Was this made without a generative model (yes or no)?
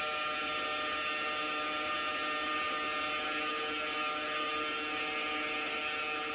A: yes